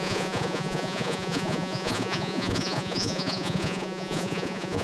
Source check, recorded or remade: remade